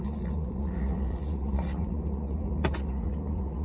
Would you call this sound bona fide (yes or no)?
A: no